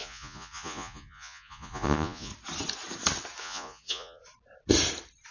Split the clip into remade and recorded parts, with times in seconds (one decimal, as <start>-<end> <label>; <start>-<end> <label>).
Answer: 0.0-2.3 remade; 2.3-3.4 recorded; 3.4-4.2 remade; 4.2-5.3 recorded